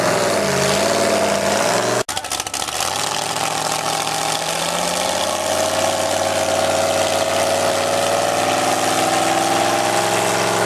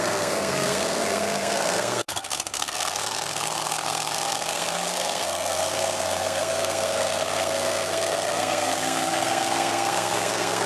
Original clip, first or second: first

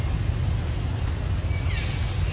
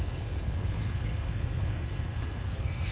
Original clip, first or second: first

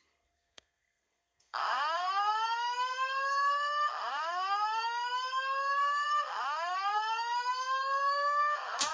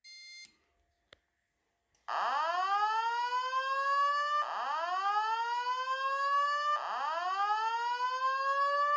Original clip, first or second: second